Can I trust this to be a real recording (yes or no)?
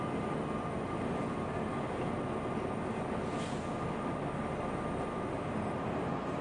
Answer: yes